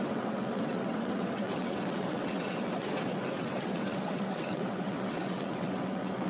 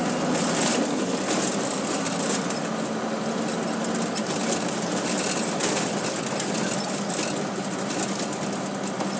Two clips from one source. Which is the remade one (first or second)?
first